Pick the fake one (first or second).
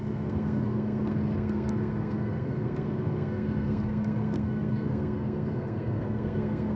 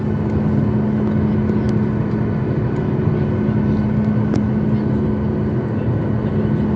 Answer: first